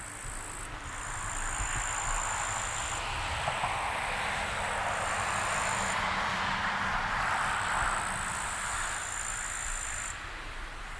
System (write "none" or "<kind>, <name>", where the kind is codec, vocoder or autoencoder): vocoder, BigVGAN v2